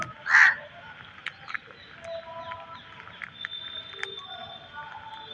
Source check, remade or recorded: recorded